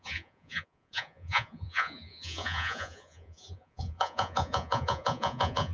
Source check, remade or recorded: remade